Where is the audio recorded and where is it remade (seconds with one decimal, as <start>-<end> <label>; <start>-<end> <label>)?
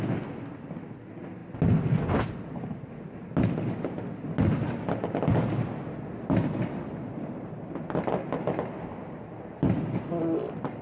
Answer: 0.0-10.8 recorded